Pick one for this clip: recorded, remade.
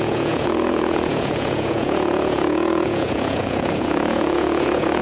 remade